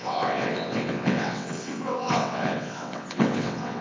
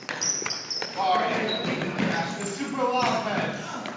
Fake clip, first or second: first